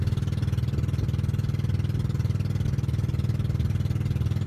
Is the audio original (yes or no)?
yes